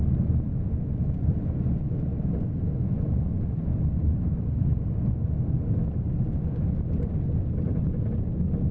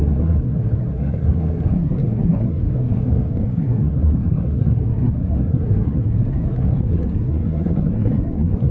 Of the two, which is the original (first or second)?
first